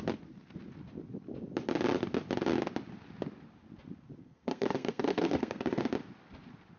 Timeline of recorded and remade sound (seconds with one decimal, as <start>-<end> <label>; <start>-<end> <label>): 0.0-4.2 recorded; 4.2-5.9 remade; 5.9-6.8 recorded